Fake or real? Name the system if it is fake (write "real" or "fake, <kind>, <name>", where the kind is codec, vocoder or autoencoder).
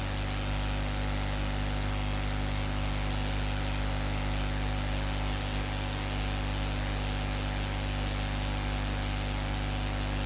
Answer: real